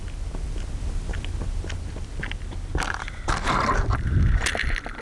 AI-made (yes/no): no